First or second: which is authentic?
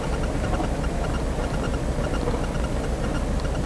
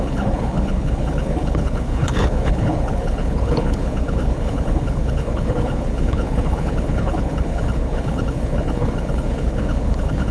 first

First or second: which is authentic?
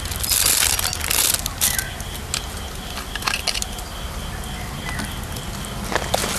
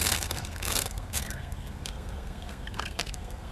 first